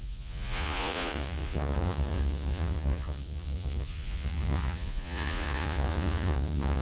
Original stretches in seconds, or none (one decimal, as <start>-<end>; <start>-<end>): none